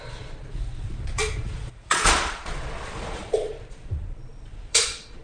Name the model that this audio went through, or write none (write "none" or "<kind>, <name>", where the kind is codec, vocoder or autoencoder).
vocoder, Vocos